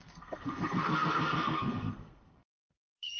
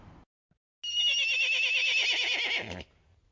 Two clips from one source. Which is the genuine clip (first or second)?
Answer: second